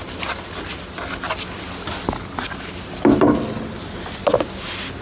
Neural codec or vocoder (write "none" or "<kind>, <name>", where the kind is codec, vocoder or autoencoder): none